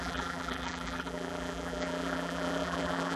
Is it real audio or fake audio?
fake